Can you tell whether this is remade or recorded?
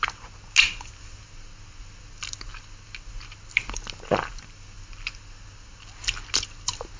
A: recorded